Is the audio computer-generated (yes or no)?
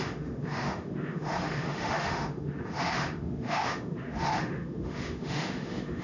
yes